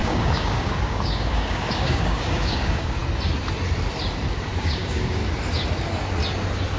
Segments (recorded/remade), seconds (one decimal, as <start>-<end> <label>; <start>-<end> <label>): 0.0-3.0 remade; 3.0-4.6 recorded; 4.6-5.2 remade; 5.2-6.8 recorded